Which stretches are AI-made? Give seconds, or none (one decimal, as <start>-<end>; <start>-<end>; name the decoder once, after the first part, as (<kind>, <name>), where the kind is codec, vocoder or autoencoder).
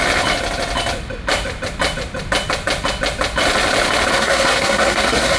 4.1-5.4 (codec, SNAC)